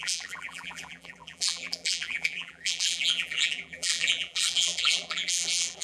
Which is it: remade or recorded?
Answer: remade